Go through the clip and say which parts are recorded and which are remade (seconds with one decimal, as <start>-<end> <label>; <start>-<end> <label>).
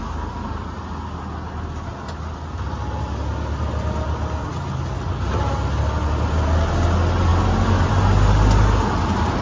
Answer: 0.0-7.3 recorded; 7.3-7.9 remade; 7.9-9.4 recorded